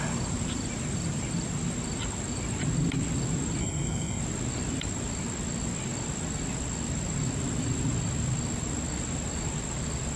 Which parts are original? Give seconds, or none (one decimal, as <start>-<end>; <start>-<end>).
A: 0.0-3.6; 4.2-10.2

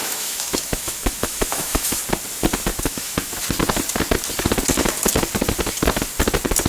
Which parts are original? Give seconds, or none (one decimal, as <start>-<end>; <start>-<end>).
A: 2.0-2.7; 3.3-6.7

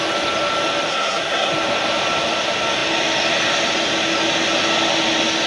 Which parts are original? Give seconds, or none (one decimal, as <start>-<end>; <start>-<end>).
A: 0.0-0.9; 1.5-5.5